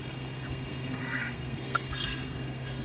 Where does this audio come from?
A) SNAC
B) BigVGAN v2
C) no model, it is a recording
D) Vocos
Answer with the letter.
A